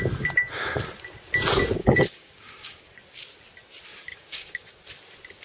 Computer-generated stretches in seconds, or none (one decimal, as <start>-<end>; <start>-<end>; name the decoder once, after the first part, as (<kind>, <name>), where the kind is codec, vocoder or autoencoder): 1.8-2.8 (codec, DAC); 4.1-4.8